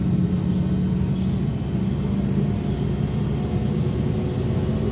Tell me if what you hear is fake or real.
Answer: real